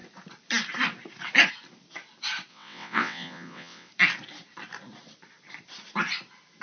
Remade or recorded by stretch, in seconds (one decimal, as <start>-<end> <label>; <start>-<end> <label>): 0.0-2.5 recorded; 2.5-3.9 remade; 3.9-6.6 recorded